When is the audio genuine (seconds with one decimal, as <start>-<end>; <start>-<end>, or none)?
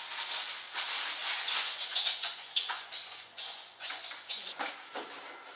0.0-1.2; 4.6-5.6